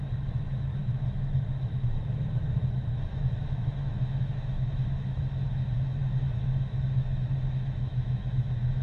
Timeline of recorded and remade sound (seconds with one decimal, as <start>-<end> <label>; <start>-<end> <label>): 0.0-8.8 remade